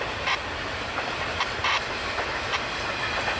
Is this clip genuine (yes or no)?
yes